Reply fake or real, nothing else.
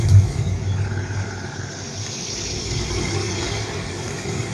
fake